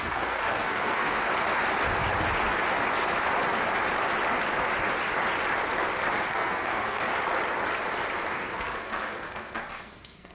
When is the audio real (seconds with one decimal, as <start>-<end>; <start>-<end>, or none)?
1.3-6.3; 7.1-8.3